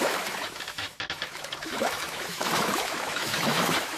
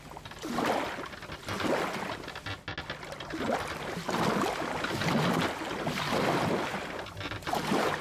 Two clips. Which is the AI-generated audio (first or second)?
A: first